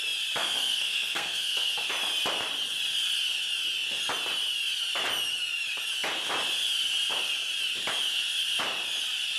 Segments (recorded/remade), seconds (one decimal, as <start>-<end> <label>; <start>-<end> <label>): 0.0-0.4 recorded; 0.4-1.7 remade; 1.7-9.4 recorded